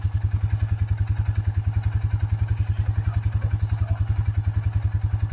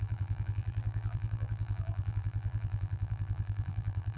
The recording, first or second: first